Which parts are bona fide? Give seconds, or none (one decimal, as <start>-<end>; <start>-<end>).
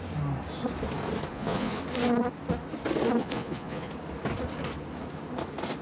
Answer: 0.0-1.3; 1.8-3.2; 3.9-5.8